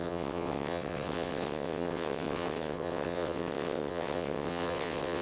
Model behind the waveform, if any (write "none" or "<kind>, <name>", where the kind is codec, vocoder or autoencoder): vocoder, WaveNeXt